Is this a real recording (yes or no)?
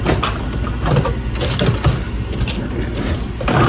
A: yes